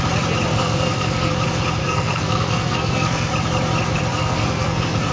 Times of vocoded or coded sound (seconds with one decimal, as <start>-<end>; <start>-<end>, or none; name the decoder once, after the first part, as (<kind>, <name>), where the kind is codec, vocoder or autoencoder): 0.5-1.3 (codec, SNAC); 1.8-3.3; 4.1-5.1